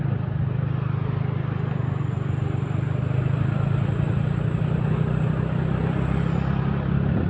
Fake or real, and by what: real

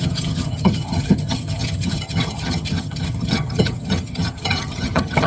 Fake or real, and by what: fake, vocoder, HiFi-GAN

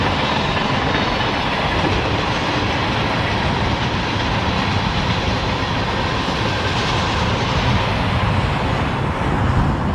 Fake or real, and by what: real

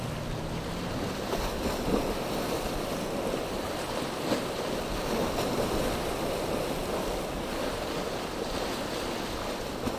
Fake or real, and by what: real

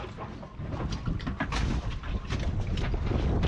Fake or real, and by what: real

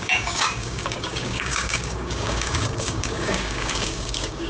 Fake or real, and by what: fake, codec, DAC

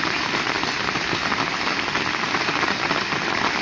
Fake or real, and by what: real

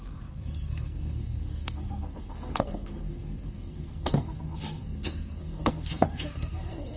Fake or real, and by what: fake, codec, SNAC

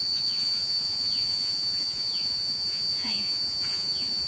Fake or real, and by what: fake, vocoder, Vocos